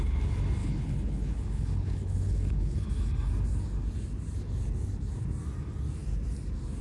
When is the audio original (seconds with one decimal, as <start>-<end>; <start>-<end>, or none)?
0.0-0.6; 2.9-6.8